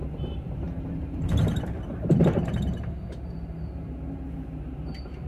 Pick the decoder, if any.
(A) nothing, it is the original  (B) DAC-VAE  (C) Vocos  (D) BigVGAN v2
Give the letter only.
D